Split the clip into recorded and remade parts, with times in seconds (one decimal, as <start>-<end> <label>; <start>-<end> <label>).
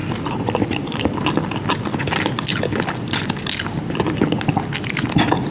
0.0-5.5 recorded